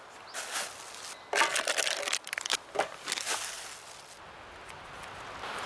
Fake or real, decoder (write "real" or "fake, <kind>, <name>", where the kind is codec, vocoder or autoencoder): real